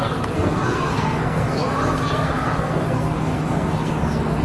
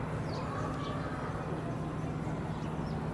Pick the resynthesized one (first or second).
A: first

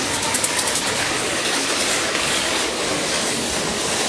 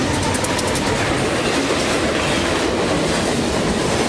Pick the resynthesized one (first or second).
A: first